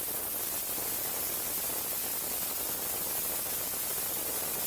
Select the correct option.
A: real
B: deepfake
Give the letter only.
A